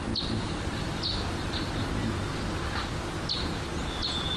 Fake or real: real